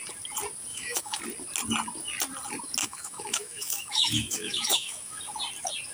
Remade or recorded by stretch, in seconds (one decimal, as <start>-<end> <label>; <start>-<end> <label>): 0.0-0.7 recorded; 0.7-1.2 remade; 1.2-2.8 recorded; 2.8-5.2 remade; 5.2-5.9 recorded